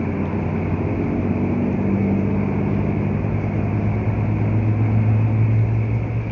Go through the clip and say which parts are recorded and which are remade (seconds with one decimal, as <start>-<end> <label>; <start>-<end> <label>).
0.0-6.3 recorded